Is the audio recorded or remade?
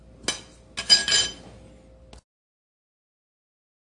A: recorded